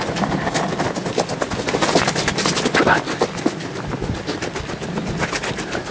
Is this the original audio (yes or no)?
yes